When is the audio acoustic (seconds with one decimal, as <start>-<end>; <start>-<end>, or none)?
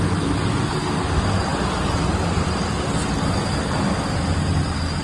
0.0-5.0